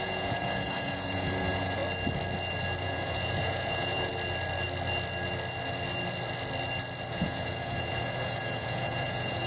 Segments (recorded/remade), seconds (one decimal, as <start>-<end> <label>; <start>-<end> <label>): 0.0-1.8 remade; 1.8-2.8 recorded; 2.8-4.1 remade; 4.1-7.1 recorded; 7.1-9.5 remade